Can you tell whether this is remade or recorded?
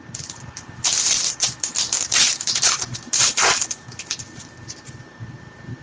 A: remade